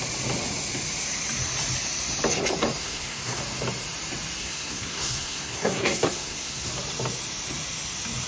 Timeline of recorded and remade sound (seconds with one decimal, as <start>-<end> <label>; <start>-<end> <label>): 0.0-2.8 recorded; 2.8-3.4 remade; 3.4-4.4 recorded; 4.4-6.7 remade; 6.7-8.3 recorded

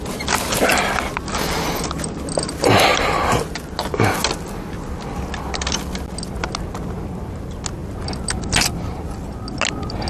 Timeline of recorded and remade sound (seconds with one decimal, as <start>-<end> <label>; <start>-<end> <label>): 0.0-10.1 recorded

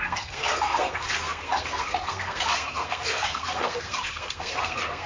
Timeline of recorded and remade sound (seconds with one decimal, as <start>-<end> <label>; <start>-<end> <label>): 0.0-5.1 remade

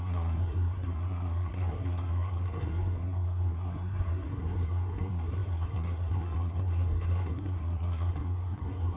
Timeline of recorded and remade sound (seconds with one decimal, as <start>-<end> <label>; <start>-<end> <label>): 0.0-9.0 remade

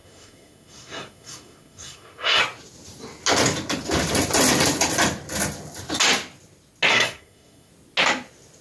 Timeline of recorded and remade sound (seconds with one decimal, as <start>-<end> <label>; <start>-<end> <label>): 0.0-2.4 remade; 2.4-6.9 recorded; 6.9-7.7 remade; 7.7-8.6 recorded

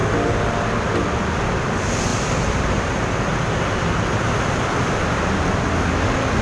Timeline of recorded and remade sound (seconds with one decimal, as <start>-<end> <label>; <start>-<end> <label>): 0.0-6.4 recorded

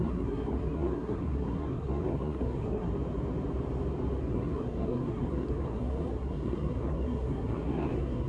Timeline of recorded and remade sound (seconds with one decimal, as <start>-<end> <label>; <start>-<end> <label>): 0.0-2.9 remade; 2.9-4.3 recorded; 4.3-8.3 remade